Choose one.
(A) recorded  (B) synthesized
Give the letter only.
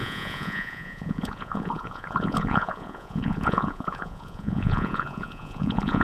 B